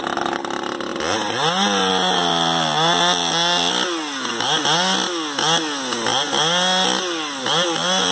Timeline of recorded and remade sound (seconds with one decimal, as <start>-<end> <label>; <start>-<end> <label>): 0.0-8.1 recorded